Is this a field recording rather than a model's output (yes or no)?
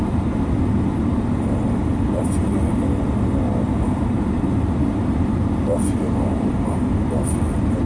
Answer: yes